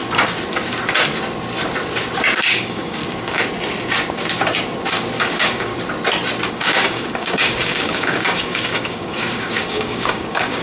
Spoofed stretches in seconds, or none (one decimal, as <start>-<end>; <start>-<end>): 2.4-3.0; 5.2-5.7; 6.5-10.6

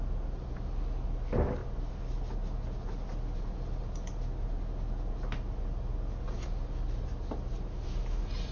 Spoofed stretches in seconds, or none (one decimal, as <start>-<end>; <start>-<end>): none

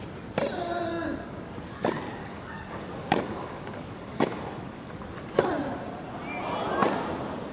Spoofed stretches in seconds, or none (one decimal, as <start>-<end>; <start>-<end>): 0.9-1.5; 2.2-5.4